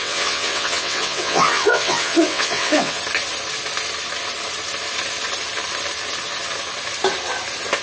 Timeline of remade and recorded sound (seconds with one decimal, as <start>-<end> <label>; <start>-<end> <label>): 0.0-3.0 remade; 3.0-7.8 recorded